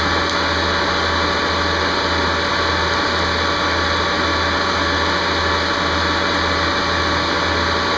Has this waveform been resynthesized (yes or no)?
no